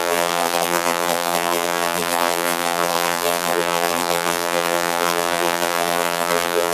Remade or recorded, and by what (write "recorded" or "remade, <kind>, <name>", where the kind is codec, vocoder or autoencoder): remade, vocoder, BigVGAN v2